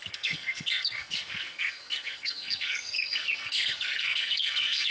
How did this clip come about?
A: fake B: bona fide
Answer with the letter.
A